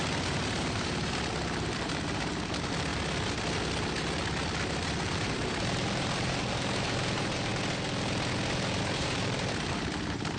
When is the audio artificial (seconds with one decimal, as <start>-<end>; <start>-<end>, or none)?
0.0-2.9; 4.7-7.5; 8.8-10.4